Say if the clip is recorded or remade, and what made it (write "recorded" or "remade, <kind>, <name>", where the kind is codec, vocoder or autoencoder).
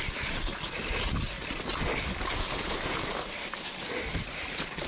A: remade, vocoder, BigVGAN v2